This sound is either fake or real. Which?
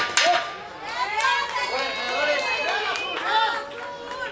real